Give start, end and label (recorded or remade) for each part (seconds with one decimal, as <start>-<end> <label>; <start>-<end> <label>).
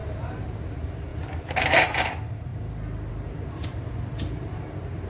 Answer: 0.0-1.1 recorded; 1.1-2.0 remade; 2.0-5.1 recorded